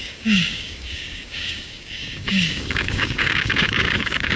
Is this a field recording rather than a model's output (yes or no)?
no